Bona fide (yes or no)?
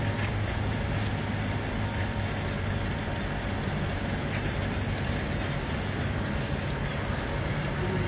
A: yes